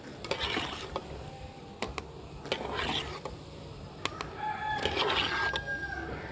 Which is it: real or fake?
real